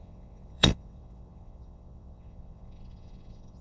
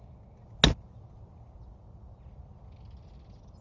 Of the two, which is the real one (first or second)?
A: second